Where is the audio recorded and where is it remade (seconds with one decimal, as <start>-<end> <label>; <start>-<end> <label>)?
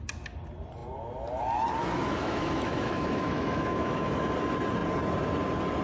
0.0-1.8 recorded; 1.8-4.1 remade; 4.1-5.8 recorded